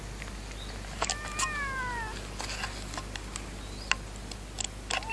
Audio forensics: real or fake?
real